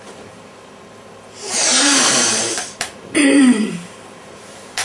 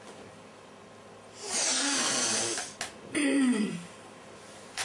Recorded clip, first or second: second